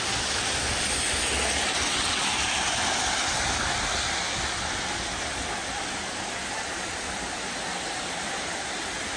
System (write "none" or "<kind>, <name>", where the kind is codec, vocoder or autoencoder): none